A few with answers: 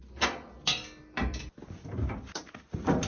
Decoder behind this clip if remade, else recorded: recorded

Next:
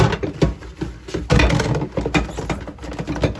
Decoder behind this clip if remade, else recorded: recorded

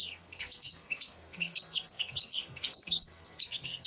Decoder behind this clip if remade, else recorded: remade, codec, SNAC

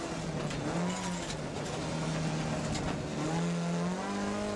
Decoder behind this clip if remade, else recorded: recorded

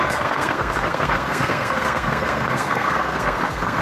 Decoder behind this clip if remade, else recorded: remade, codec, SNAC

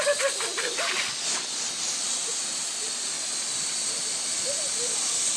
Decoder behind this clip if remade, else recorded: recorded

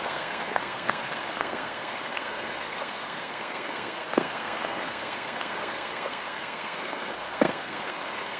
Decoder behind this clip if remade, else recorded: remade, codec, SNAC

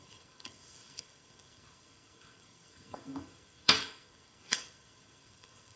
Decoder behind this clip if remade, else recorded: remade, codec, SNAC